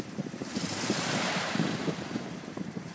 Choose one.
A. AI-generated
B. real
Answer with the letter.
A